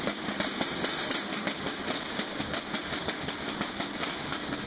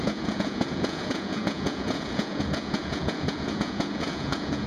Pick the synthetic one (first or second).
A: second